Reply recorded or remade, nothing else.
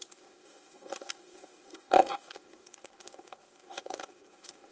remade